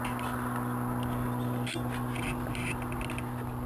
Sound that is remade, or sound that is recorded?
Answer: recorded